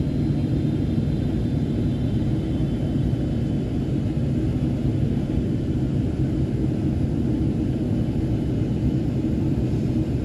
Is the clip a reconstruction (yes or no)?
no